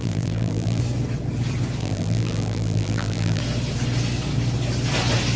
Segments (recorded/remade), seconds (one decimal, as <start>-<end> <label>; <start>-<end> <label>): 0.0-0.8 remade; 0.8-1.8 recorded; 1.8-3.4 remade; 3.4-5.4 recorded